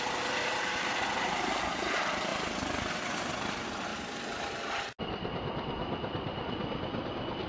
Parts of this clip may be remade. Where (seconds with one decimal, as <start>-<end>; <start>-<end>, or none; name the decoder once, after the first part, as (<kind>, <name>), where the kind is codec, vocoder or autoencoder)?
none